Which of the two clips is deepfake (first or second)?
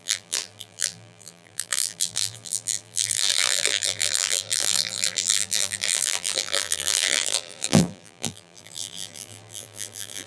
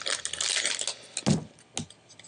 first